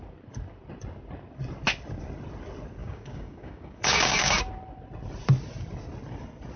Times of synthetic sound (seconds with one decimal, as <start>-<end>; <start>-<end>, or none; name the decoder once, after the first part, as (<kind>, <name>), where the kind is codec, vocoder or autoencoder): 2.8-4.4 (codec, DAC)